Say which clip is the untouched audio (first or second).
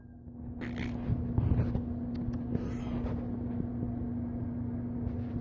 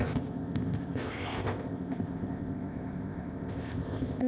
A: first